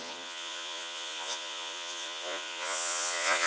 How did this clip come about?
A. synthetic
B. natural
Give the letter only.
A